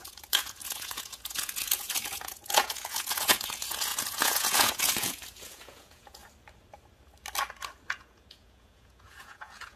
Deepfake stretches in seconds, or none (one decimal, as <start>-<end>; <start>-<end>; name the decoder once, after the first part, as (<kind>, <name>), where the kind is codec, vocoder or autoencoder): 0.0-6.2 (vocoder, Vocos); 7.9-9.8

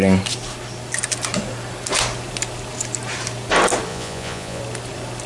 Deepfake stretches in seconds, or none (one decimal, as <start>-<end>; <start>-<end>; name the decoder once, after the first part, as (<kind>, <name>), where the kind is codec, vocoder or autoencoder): 3.9-4.6 (vocoder, Vocos)